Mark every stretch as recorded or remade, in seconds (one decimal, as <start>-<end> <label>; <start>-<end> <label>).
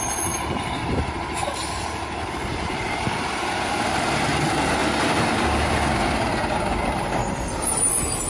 0.0-4.8 remade; 4.8-6.6 recorded; 6.6-7.2 remade; 7.2-7.9 recorded; 7.9-8.3 remade